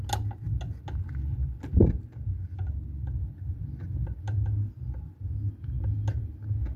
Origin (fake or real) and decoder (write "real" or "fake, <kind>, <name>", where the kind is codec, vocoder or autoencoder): real